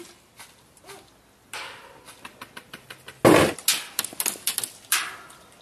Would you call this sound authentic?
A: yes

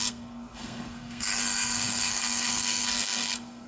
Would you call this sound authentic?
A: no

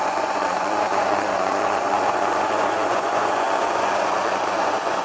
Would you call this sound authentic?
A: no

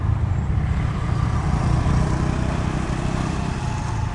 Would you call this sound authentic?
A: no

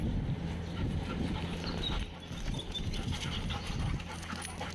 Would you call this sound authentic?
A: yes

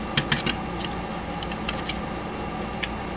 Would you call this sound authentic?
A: yes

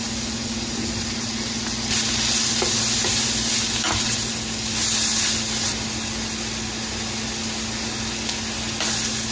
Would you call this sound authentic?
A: yes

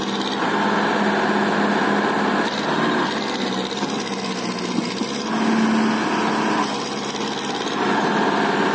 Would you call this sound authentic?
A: yes